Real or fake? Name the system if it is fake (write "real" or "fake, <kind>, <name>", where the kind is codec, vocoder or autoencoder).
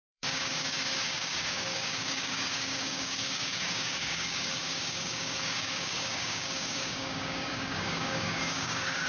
fake, codec, DAC